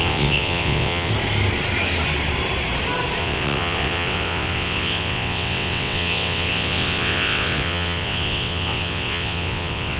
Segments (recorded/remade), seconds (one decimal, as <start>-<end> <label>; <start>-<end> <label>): 0.0-1.1 remade; 1.1-3.2 recorded; 3.2-10.0 remade